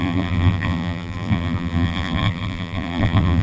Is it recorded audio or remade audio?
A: remade